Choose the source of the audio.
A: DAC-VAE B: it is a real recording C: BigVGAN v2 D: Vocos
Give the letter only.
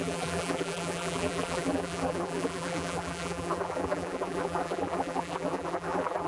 C